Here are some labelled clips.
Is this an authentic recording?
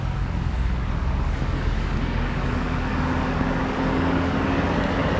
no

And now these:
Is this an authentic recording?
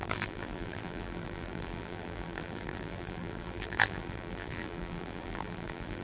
no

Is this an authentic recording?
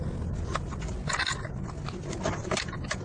yes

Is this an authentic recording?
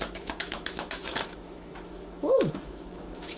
no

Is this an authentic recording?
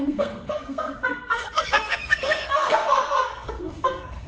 no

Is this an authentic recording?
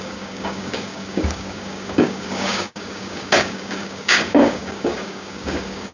no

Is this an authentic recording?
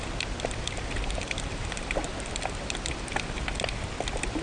yes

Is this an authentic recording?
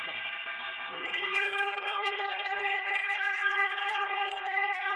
no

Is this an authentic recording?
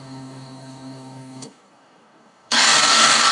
no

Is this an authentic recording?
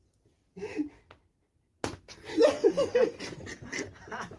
yes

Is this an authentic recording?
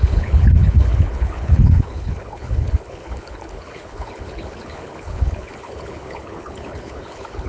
no